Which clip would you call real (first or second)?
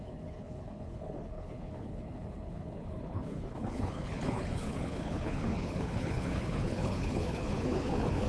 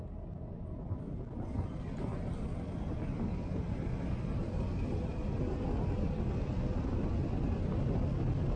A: second